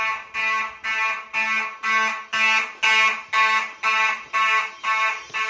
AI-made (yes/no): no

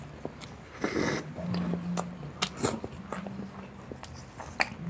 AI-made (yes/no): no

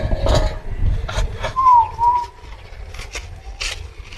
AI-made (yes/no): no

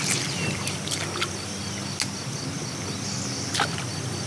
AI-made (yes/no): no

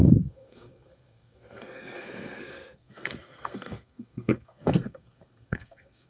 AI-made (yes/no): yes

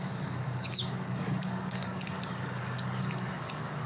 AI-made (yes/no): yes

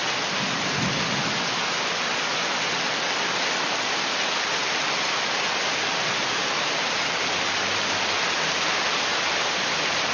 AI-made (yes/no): no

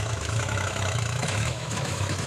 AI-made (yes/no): yes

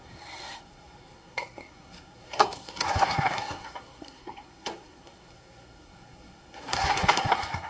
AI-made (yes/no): yes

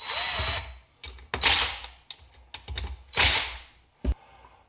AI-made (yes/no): no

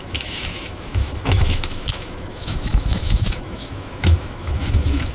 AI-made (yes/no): yes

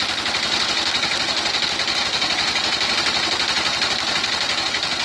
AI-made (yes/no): no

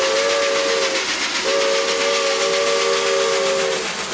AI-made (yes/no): no